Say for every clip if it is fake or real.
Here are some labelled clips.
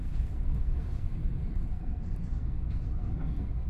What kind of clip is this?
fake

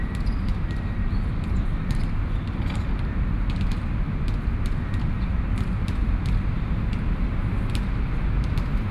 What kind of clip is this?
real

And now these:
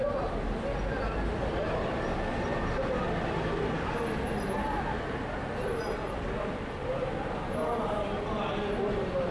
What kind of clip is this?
real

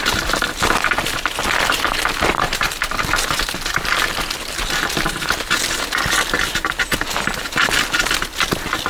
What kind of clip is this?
real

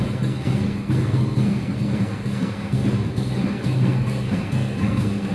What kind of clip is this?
fake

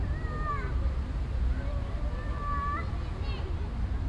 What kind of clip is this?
real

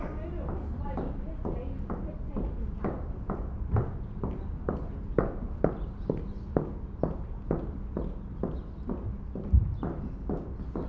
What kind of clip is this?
real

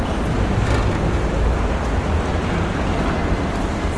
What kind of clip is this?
real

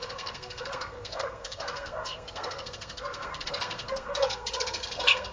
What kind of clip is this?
fake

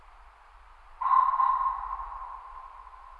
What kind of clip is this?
real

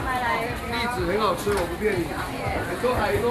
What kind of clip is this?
real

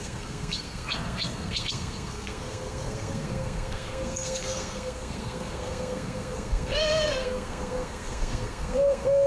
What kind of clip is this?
fake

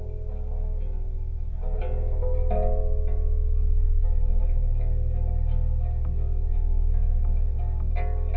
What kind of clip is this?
real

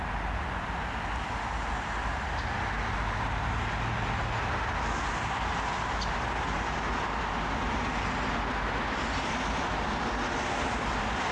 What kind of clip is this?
real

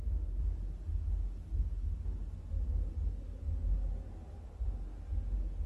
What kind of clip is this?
real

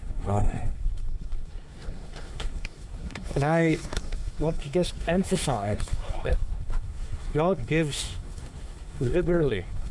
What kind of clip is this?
fake